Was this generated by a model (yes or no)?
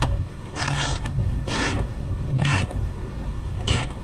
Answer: yes